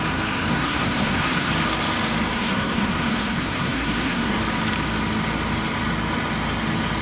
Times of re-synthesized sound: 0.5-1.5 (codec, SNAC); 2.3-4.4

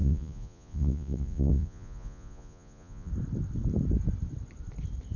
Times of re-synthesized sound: 0.0-3.1 (vocoder, Vocos)

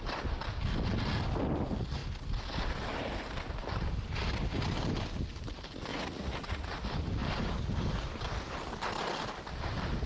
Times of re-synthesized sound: 5.9-6.8 (vocoder, Vocos)

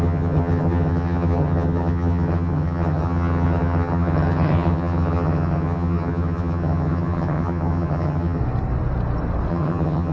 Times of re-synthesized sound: 0.0-8.4 (vocoder, HiFi-GAN); 9.5-10.1

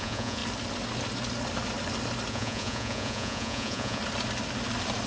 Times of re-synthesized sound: 0.0-0.4 (vocoder, Vocos); 2.3-4.0

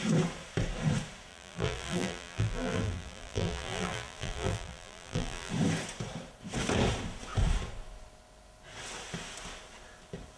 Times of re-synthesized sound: 1.3-5.5 (vocoder, BigVGAN v2)

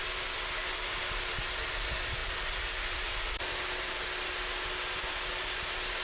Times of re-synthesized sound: 2.2-3.4 (vocoder, BigVGAN v2)

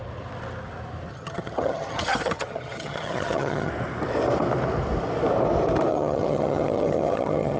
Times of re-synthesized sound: 1.1-3.7 (vocoder, HiFi-GAN); 5.9-7.6